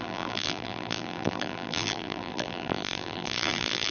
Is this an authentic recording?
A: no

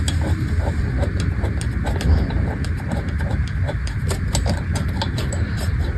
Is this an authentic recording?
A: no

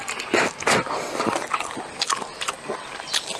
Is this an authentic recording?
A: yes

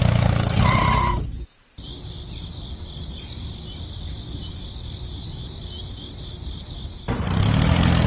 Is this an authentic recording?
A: yes